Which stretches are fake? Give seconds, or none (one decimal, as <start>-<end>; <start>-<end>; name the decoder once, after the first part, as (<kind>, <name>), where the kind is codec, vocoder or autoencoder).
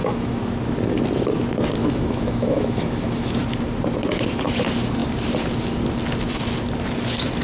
0.0-0.5 (autoencoder, DAC-VAE); 1.8-3.4